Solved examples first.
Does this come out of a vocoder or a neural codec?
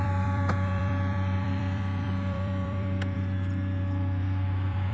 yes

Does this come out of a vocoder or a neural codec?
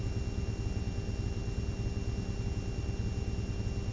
no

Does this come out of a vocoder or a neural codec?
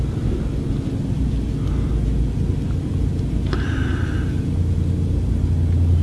no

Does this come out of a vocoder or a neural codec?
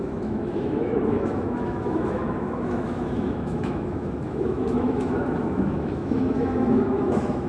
yes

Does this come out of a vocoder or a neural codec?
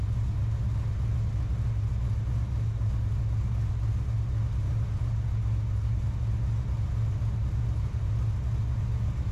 no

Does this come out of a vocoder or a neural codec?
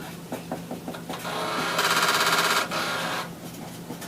no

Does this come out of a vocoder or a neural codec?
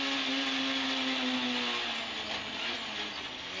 no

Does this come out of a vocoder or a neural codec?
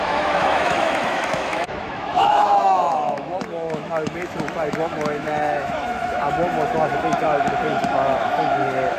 yes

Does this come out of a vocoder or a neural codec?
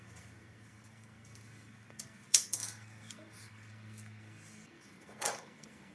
yes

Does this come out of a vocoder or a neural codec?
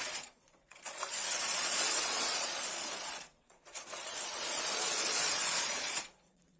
yes